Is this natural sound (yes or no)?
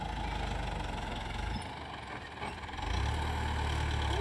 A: yes